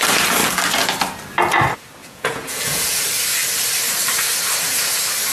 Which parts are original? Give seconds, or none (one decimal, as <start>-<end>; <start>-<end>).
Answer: 0.0-2.0; 3.0-5.3